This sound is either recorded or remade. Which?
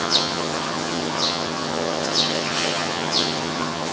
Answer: remade